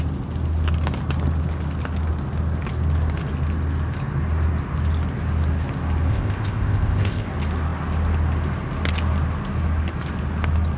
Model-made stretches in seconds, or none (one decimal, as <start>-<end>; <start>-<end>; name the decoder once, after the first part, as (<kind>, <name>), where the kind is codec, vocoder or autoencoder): 6.1-7.3 (codec, ZipCodec)